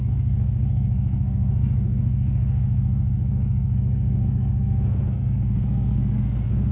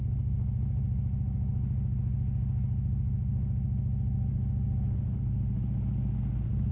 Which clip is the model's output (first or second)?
first